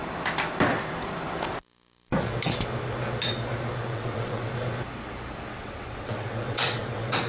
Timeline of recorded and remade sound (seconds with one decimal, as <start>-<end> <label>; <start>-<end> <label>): 0.0-3.9 recorded; 3.9-4.5 remade; 4.5-5.5 recorded; 5.5-7.3 remade